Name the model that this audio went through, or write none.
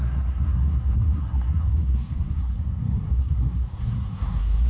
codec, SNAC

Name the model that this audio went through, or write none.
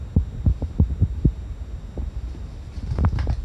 none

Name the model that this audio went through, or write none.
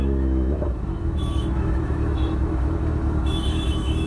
autoencoder, DAC-VAE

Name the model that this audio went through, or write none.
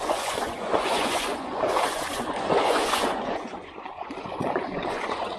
vocoder, Vocos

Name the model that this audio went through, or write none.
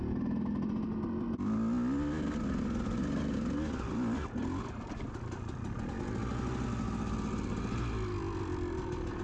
none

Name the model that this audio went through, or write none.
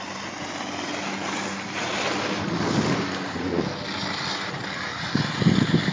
none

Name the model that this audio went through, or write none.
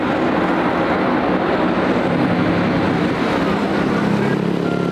none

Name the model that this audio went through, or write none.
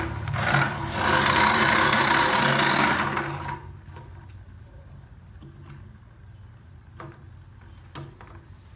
none